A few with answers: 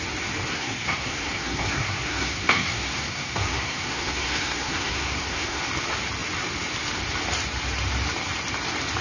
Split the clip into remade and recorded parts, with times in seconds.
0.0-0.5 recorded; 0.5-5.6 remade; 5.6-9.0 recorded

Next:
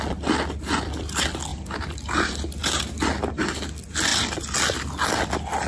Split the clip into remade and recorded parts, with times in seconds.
0.0-1.5 recorded; 1.5-2.9 remade; 2.9-5.7 recorded

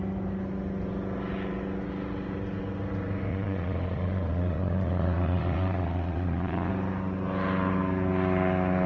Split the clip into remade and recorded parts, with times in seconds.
0.0-3.3 recorded; 3.3-6.7 remade; 6.7-8.9 recorded